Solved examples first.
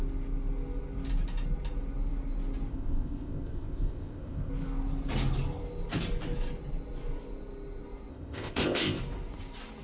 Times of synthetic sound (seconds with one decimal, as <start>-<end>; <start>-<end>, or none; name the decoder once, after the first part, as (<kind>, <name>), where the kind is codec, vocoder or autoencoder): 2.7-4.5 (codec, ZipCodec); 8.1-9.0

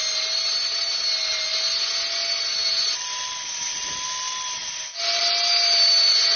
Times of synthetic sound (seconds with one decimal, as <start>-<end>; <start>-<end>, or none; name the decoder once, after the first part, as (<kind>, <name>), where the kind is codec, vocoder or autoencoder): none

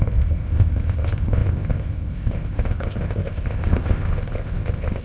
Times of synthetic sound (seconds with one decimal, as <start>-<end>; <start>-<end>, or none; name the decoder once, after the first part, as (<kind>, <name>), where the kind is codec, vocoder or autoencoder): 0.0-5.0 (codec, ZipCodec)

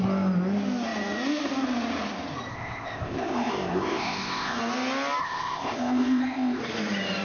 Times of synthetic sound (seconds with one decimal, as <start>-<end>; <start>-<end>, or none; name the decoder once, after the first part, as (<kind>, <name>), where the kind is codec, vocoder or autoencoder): 2.5-4.6 (codec, ZipCodec); 5.2-6.6

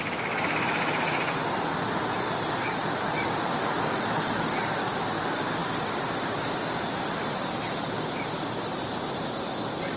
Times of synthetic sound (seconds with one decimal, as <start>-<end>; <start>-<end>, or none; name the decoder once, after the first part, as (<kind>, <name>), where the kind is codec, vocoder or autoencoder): none

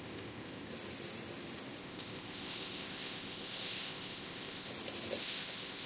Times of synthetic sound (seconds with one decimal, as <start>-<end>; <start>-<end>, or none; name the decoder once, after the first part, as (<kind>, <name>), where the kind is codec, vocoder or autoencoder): 0.0-0.7 (codec, ZipCodec); 1.8-4.7; 5.2-5.9